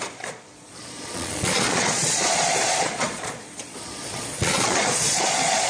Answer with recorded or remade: remade